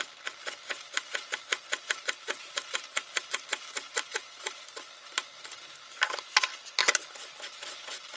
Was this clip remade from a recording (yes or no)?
no